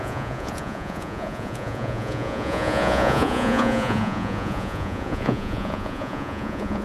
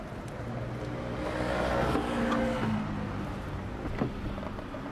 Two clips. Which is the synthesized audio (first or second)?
first